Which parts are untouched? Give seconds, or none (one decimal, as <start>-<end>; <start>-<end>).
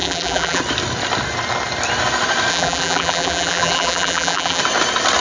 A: 0.6-2.5; 4.6-5.2